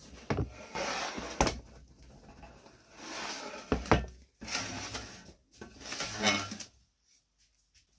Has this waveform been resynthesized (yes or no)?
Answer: no